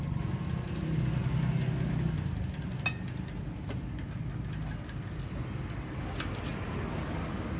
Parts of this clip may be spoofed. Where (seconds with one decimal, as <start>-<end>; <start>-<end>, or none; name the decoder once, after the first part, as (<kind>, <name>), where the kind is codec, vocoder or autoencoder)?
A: none